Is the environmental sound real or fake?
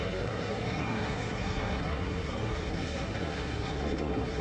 fake